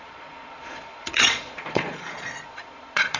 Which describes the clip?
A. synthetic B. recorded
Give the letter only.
A